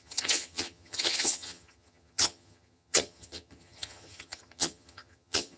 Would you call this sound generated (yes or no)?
yes